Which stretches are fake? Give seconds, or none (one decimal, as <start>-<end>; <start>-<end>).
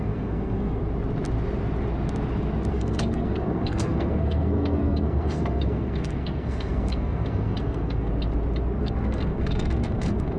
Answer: 0.0-0.8; 2.7-8.1; 8.8-10.4